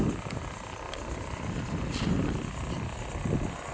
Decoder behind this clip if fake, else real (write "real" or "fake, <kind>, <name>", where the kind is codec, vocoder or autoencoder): real